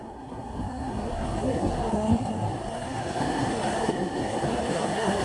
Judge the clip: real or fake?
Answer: fake